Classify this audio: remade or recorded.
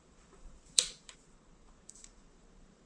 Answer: remade